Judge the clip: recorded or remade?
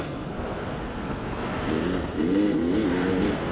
remade